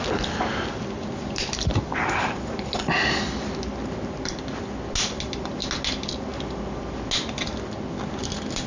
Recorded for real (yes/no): yes